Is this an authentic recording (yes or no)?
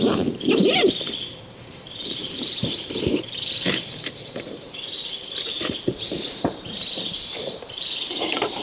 no